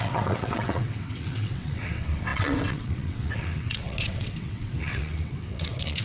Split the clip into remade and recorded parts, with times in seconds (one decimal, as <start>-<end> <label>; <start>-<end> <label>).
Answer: 0.0-6.0 remade